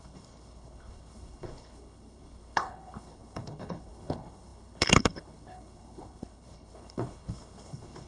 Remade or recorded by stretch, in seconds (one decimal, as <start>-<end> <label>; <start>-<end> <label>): 0.0-8.1 remade

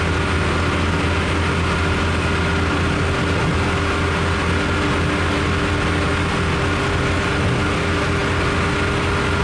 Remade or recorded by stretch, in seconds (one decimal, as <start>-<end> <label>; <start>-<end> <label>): 0.0-9.4 recorded

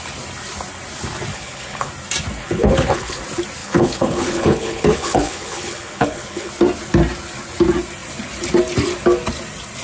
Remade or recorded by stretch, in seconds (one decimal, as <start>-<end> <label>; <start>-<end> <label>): 0.0-1.3 recorded; 1.3-1.9 remade; 1.9-2.4 recorded; 2.4-3.2 remade; 3.2-3.6 recorded; 3.6-6.5 remade; 6.5-9.8 recorded

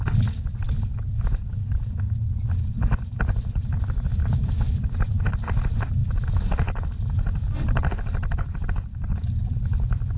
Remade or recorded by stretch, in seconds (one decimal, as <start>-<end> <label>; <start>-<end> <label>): 0.0-10.2 recorded